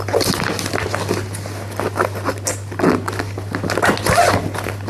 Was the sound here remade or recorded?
recorded